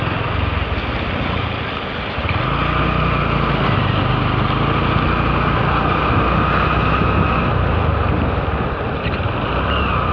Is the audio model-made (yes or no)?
no